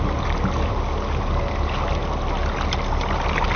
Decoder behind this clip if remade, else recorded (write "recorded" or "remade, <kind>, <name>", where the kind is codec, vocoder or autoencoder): recorded